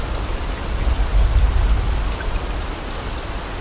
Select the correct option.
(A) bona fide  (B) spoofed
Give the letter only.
A